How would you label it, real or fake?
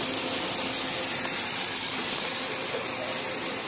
real